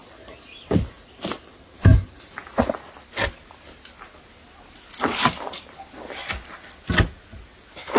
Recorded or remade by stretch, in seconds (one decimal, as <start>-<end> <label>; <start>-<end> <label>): 0.0-8.0 recorded